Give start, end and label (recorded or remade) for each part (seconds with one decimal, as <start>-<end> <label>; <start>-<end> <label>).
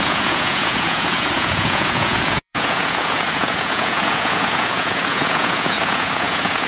0.0-6.7 remade